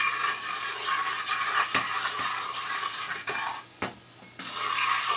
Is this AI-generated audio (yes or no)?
no